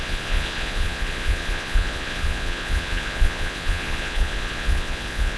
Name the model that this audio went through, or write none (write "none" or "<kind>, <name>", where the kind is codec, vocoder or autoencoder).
vocoder, Vocos